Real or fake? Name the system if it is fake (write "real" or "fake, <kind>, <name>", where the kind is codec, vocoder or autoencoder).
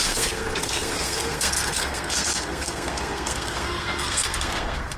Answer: fake, codec, SNAC